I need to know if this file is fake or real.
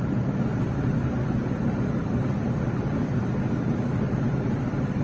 fake